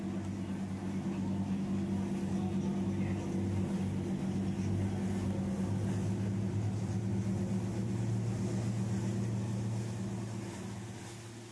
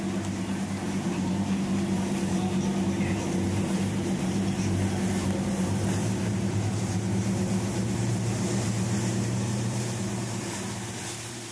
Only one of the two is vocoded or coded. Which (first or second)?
second